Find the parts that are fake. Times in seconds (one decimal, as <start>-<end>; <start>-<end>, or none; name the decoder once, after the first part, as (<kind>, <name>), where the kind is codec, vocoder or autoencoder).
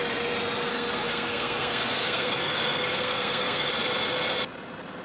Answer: 0.7-3.7 (codec, SNAC)